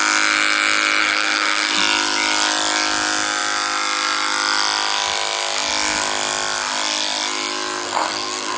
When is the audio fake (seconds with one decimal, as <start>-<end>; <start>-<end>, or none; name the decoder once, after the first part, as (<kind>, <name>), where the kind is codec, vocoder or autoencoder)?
1.0-1.8 (codec, SNAC); 7.8-8.6